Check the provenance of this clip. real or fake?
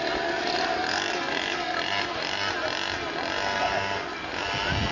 real